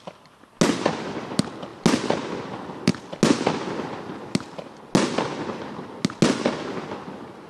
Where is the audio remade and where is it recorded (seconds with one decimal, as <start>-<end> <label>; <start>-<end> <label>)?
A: 0.0-7.5 recorded